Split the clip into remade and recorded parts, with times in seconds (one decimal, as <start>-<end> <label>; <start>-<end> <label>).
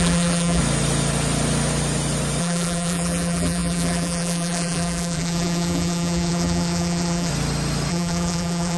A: 0.0-0.6 remade; 0.6-2.4 recorded; 2.4-7.3 remade; 7.3-7.9 recorded; 7.9-8.8 remade